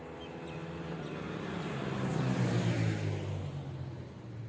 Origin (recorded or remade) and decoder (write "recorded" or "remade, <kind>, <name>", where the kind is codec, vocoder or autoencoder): recorded